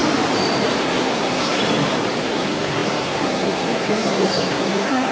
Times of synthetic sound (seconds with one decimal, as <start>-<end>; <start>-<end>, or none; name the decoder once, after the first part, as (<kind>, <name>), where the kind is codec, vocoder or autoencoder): 0.8-1.6 (codec, SNAC); 2.2-5.1